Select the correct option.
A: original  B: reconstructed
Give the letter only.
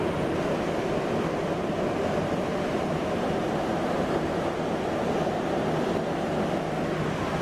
A